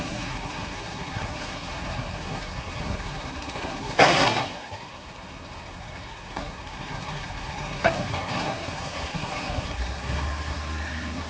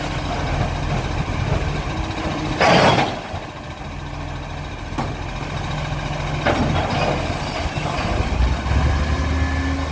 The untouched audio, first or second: second